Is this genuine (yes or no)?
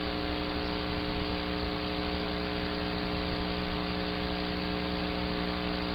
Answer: yes